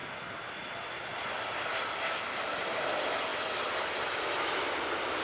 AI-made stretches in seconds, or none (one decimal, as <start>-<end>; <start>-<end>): none